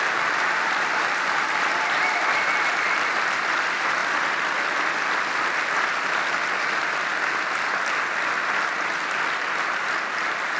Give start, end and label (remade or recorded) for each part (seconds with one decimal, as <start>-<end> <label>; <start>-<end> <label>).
0.0-7.1 remade; 7.1-9.2 recorded; 9.2-10.6 remade